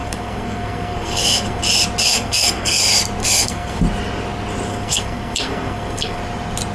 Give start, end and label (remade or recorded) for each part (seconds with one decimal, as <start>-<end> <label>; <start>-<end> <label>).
0.0-1.6 remade; 1.6-2.0 recorded; 2.0-2.8 remade; 2.8-3.2 recorded; 3.2-3.8 remade; 3.8-4.7 recorded; 4.7-6.2 remade; 6.2-6.7 recorded